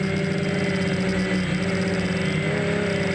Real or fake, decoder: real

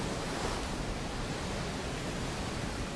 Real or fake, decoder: real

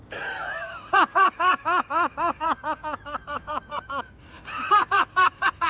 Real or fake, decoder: real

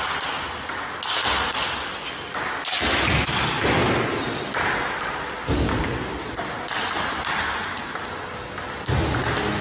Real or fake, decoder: real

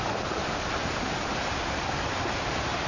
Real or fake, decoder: real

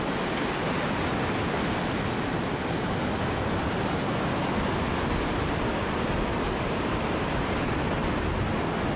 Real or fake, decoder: real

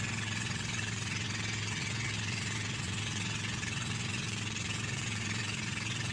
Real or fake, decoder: fake, vocoder, WaveNeXt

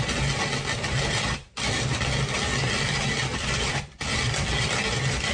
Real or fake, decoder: real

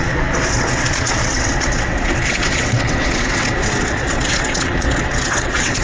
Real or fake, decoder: fake, vocoder, WaveNeXt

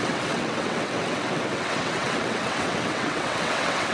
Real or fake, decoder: fake, vocoder, WaveNeXt